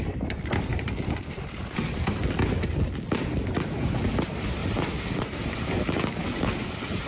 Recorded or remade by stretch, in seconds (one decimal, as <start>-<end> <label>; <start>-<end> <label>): 0.0-0.7 recorded; 0.7-1.8 remade; 1.8-4.6 recorded; 4.6-6.1 remade; 6.1-7.1 recorded